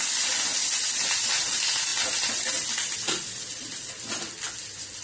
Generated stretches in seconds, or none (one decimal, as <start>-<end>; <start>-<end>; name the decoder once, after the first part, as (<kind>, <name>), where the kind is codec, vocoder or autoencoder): none